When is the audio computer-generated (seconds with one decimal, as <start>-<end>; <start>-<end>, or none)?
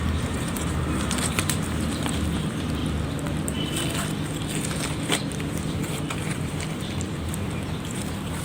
0.0-2.8; 5.4-8.4